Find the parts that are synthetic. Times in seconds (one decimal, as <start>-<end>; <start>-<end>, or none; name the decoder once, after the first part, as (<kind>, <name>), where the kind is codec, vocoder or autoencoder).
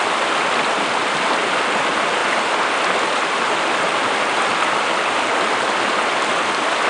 none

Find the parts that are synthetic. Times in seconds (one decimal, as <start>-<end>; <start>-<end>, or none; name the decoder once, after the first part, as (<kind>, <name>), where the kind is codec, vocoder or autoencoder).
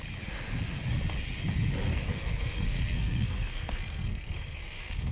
1.9-5.1 (codec, SNAC)